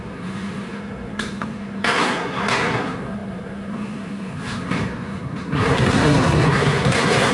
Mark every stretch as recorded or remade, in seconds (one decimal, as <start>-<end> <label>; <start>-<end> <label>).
0.0-7.3 remade